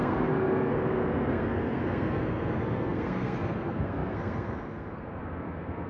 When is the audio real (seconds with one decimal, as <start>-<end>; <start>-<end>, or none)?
none